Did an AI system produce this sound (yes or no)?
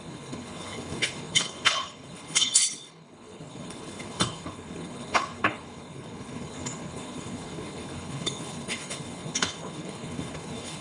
yes